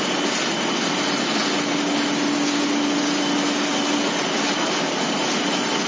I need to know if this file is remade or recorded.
recorded